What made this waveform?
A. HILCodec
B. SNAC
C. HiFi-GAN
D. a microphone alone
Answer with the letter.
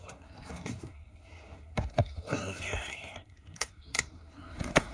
B